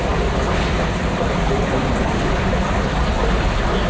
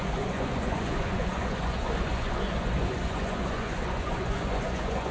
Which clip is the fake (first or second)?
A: second